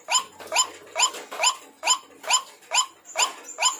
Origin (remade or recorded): recorded